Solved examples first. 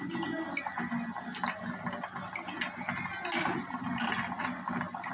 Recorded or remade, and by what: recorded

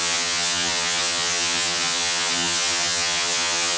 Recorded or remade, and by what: remade, vocoder, HiFi-GAN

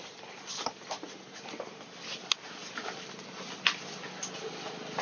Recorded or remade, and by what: recorded